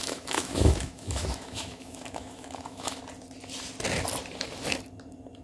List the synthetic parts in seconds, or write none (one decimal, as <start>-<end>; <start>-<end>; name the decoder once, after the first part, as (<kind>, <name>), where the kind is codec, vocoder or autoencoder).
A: 0.0-3.0 (autoencoder, DAC-VAE)